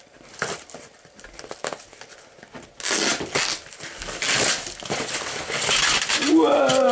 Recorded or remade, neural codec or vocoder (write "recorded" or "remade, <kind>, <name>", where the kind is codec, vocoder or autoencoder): recorded